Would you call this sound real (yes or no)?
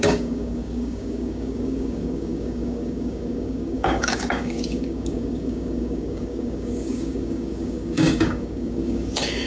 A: no